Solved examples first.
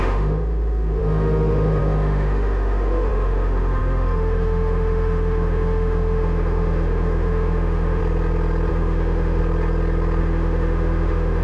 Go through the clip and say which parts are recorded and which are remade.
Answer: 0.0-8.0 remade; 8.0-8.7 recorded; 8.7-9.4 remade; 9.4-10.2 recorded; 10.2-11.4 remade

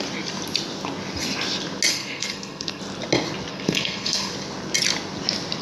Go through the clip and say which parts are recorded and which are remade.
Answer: 0.0-1.9 recorded; 1.9-2.8 remade; 2.8-3.5 recorded; 3.5-4.3 remade; 4.3-5.6 recorded

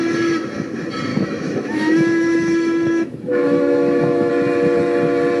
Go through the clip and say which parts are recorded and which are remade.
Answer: 0.0-1.1 recorded; 1.1-4.3 remade; 4.3-5.4 recorded

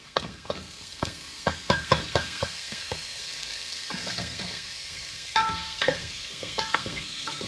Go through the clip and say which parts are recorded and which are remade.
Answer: 0.0-7.5 remade

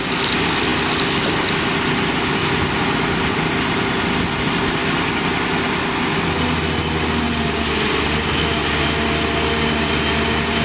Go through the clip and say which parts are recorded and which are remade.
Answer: 0.0-10.6 recorded

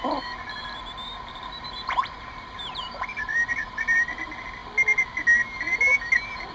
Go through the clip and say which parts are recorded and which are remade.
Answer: 0.0-1.1 recorded; 1.1-3.5 remade; 3.5-6.5 recorded

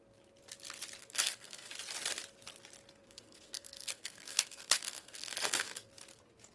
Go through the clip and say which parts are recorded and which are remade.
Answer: 0.0-1.0 recorded; 1.0-1.7 remade; 1.7-3.0 recorded; 3.0-5.9 remade; 5.9-6.5 recorded

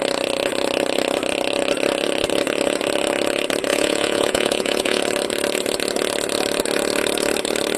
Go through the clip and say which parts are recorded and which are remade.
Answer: 0.0-3.7 recorded; 3.7-5.0 remade; 5.0-7.8 recorded